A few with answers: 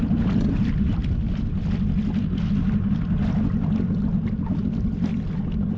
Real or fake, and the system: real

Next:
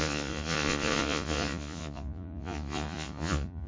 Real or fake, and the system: fake, vocoder, Vocos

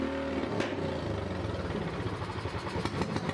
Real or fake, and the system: real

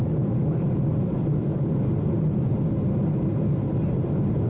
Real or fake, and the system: real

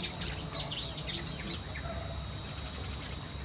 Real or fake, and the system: real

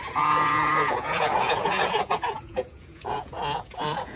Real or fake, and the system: fake, vocoder, Vocos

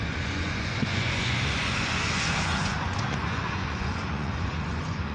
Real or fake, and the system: fake, vocoder, Vocos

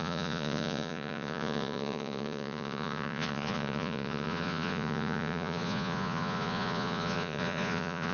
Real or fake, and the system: fake, vocoder, Vocos